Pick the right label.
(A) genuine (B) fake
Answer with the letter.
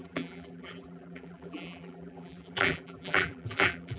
B